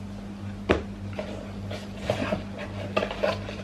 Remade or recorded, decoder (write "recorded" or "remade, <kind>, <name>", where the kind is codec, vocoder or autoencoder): recorded